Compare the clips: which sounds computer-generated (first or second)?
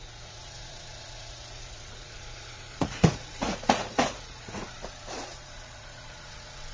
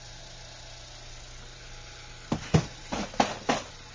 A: first